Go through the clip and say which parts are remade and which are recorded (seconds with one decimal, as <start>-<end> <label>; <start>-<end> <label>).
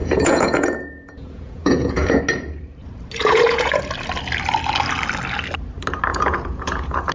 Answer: 0.0-2.2 remade; 2.2-3.2 recorded; 3.2-3.8 remade; 3.8-6.1 recorded; 6.1-7.1 remade